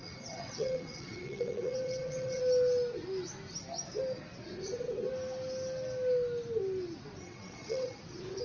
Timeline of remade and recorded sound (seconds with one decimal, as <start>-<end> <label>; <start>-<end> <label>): 0.0-2.4 remade; 2.4-7.2 recorded; 7.2-8.0 remade; 8.0-8.4 recorded